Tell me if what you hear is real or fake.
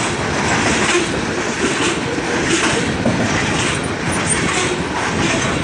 real